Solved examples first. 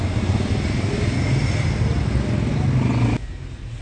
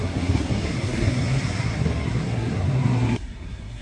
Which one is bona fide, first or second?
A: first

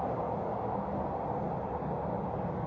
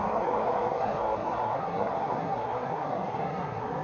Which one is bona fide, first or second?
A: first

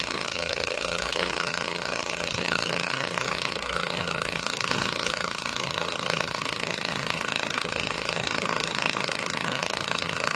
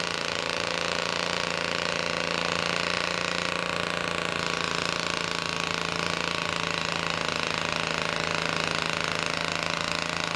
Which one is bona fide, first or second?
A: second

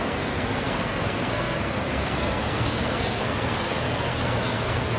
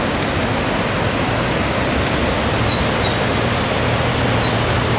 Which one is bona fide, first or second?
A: second